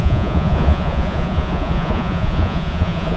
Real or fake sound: fake